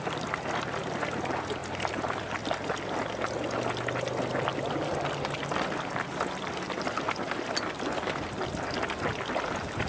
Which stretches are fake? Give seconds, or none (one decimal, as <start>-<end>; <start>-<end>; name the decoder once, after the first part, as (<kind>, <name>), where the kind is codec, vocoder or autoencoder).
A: 1.6-2.3 (vocoder, BigVGAN v2); 4.5-7.5